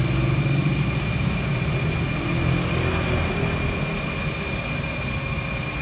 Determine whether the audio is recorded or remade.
recorded